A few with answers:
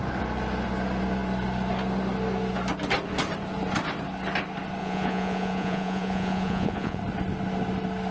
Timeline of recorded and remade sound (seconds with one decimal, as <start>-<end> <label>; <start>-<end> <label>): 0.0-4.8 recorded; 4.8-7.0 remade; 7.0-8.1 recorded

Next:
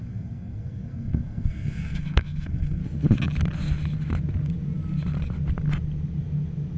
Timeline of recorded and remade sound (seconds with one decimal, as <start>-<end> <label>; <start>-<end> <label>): 0.0-2.8 remade; 2.8-6.8 recorded

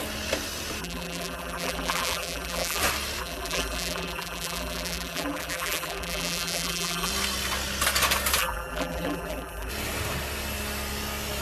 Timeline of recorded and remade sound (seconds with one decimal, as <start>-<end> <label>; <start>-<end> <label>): 0.0-0.8 recorded; 0.8-2.8 remade; 2.8-3.2 recorded; 3.2-7.1 remade; 7.1-8.4 recorded; 8.4-9.7 remade; 9.7-11.4 recorded